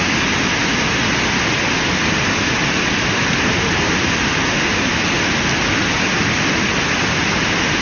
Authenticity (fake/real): real